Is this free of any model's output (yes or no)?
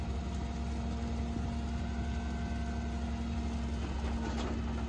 yes